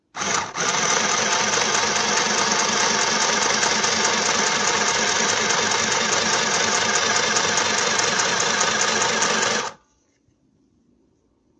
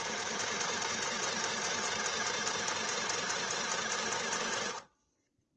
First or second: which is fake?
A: second